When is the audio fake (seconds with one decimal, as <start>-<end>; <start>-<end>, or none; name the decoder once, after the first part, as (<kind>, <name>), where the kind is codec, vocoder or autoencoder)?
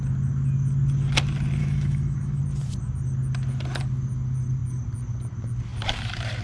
1.6-2.4 (autoencoder, DAC-VAE)